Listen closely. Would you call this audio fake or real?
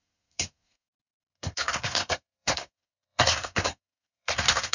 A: fake